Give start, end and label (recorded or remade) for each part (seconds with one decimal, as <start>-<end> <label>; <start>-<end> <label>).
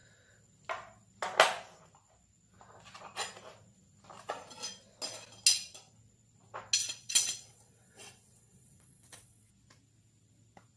0.0-6.8 recorded; 6.8-9.5 remade; 9.5-10.8 recorded